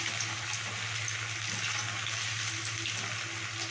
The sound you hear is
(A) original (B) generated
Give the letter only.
A